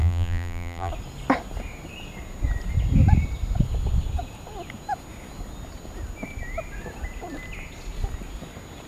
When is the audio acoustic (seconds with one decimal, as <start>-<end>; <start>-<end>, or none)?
0.9-8.9